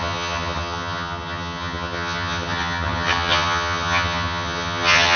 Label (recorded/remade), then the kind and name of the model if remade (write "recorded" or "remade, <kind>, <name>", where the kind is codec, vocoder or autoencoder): remade, vocoder, HiFi-GAN